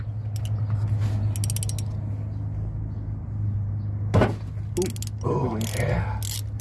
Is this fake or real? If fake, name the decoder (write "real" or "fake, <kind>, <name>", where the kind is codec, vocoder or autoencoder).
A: real